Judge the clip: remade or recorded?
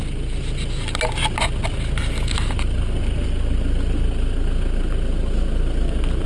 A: recorded